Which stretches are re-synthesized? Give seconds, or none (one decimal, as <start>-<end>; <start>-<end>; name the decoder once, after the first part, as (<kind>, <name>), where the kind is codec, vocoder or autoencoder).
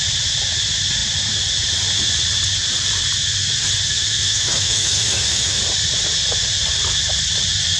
3.9-5.6 (autoencoder, DAC-VAE)